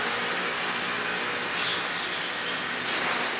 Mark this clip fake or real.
real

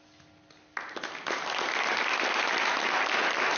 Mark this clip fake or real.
real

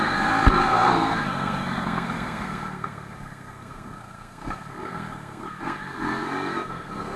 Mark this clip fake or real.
fake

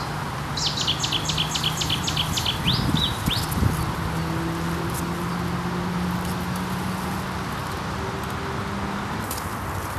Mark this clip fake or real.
real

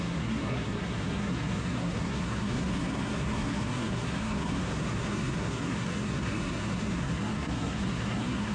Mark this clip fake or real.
fake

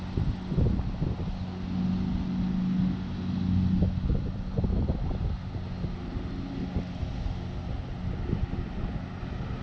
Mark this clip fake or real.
real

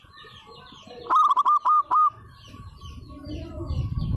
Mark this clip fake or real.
real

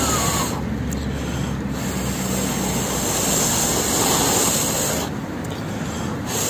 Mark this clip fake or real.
real